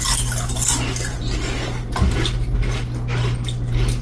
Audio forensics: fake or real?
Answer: real